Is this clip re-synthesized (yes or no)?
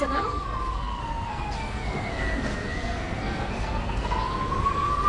yes